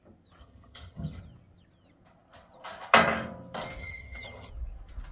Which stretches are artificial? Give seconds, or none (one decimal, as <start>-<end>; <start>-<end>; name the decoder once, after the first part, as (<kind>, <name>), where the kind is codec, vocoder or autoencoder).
0.4-1.2 (vocoder, HiFi-GAN); 3.8-4.5